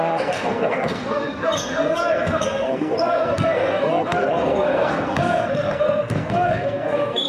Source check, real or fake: fake